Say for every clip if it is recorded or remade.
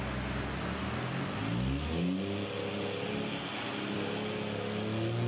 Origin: recorded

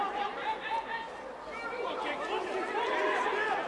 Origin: recorded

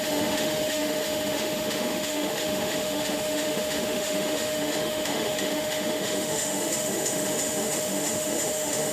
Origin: remade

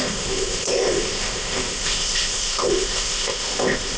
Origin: remade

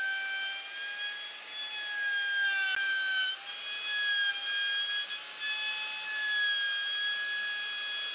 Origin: recorded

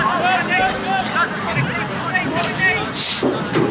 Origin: recorded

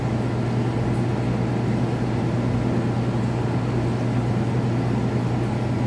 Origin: recorded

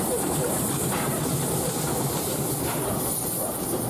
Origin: recorded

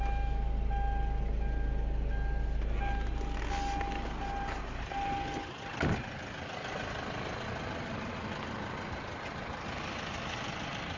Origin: recorded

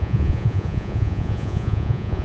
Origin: remade